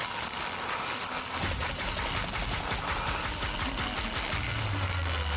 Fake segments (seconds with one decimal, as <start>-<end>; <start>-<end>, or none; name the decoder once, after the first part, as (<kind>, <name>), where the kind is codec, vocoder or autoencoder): none